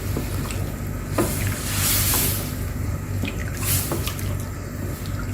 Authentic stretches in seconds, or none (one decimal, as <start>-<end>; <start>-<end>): 0.0-1.2; 2.5-3.4; 4.1-5.3